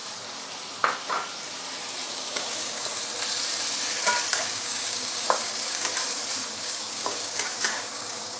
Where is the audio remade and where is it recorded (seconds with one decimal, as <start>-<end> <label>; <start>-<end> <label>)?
0.0-2.1 recorded; 2.1-3.0 remade; 3.0-4.3 recorded; 4.3-5.9 remade; 5.9-6.6 recorded; 6.6-8.4 remade